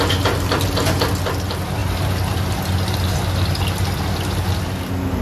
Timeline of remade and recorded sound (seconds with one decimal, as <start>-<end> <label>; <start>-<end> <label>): 0.0-5.2 recorded